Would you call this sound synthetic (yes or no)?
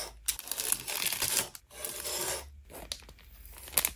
no